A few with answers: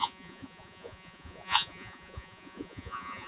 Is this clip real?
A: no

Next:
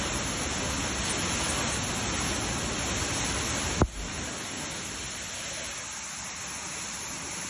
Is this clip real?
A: yes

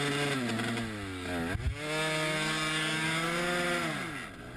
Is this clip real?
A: yes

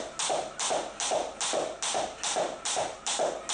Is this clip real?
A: yes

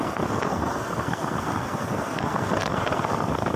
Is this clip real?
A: no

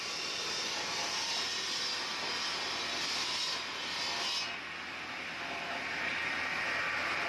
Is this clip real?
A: yes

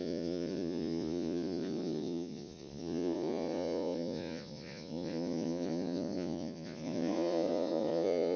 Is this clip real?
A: no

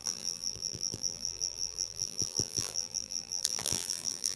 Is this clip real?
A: no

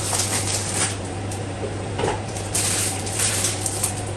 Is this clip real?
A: no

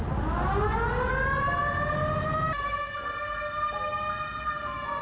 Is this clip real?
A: yes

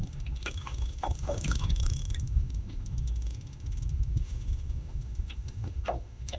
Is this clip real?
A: no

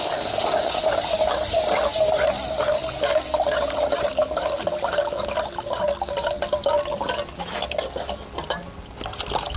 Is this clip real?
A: yes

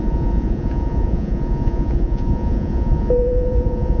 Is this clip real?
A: no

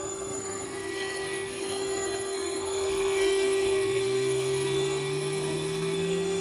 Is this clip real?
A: no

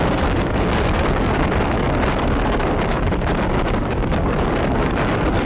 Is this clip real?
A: no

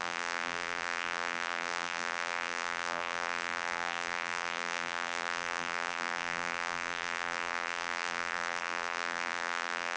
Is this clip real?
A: no